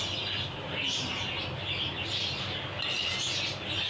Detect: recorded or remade recorded